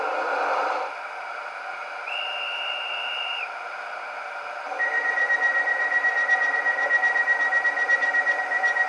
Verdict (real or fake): fake